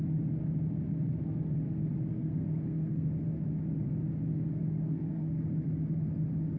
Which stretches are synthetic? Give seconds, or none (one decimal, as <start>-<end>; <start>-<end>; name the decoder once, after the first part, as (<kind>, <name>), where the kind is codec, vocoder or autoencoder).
2.1-3.1 (codec, SNAC); 4.3-5.4